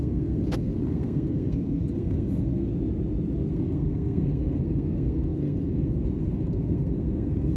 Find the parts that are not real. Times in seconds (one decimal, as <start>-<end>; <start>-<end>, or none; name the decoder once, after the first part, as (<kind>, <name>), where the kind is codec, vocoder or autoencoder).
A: 0.0-2.7 (codec, SNAC); 3.5-7.6